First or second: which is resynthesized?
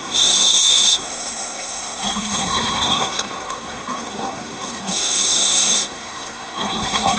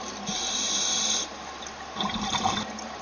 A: first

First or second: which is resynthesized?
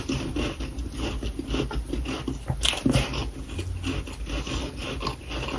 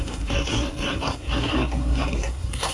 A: second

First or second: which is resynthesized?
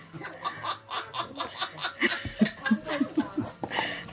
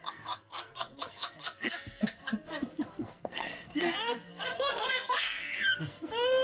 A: second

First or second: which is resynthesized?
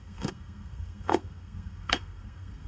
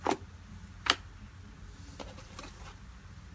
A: first